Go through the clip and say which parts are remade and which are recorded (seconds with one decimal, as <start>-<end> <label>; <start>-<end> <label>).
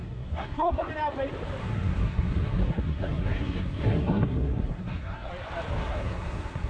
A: 0.0-0.9 remade; 0.9-1.6 recorded; 1.6-5.3 remade; 5.3-5.8 recorded; 5.8-6.7 remade